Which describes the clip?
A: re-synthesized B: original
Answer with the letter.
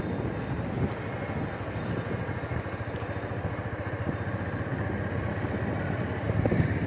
B